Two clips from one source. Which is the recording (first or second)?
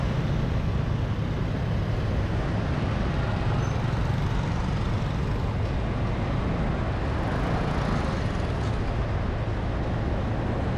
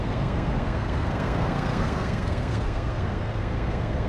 first